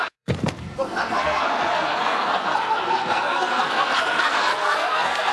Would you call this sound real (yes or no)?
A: no